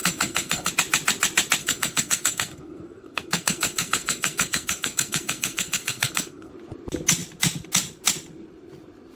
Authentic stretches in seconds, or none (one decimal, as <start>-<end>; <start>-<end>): 0.7-1.6; 6.5-9.2